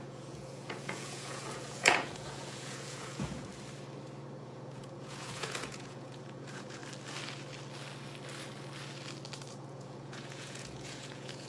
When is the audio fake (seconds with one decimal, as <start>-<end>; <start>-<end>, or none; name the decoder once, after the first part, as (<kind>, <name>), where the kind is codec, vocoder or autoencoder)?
0.0-3.5 (vocoder, Vocos); 4.4-6.8; 9.5-11.5